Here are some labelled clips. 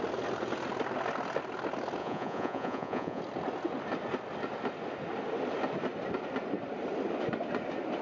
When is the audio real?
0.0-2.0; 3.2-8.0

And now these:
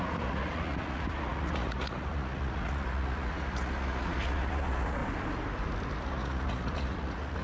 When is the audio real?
5.0-6.0

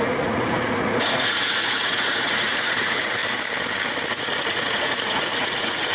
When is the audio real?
3.2-4.1

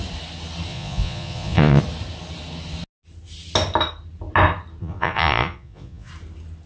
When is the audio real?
0.0-0.7; 1.8-4.8; 6.1-6.7

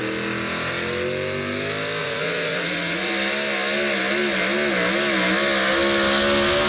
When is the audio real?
0.0-2.0; 3.1-6.7

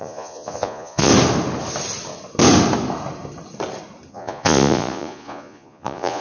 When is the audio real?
1.1-4.1